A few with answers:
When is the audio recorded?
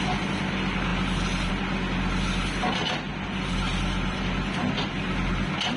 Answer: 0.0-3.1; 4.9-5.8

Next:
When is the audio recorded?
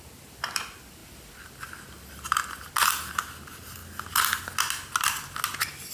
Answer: 0.0-5.9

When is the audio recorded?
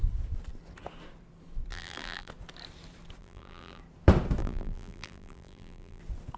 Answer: 0.0-1.7; 2.3-3.2; 3.8-4.4; 6.0-6.4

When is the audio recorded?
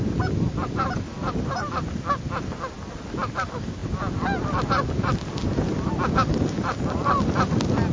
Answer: 0.0-1.1; 2.0-6.3; 7.0-7.9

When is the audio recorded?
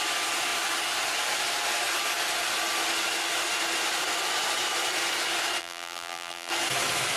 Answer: 0.0-5.6; 6.5-7.2